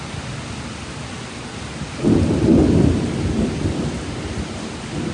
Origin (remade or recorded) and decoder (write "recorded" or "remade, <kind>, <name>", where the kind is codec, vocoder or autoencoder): recorded